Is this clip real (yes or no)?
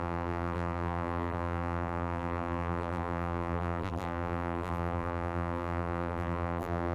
no